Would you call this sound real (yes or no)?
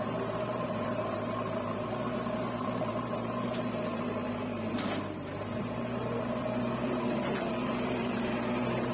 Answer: no